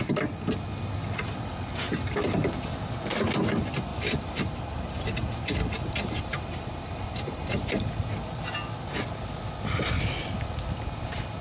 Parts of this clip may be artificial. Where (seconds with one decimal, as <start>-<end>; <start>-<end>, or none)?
3.9-8.1